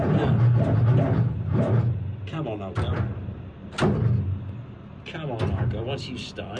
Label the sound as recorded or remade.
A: recorded